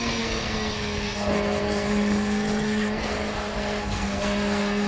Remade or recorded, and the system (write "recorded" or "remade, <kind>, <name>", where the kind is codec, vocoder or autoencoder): remade, codec, SNAC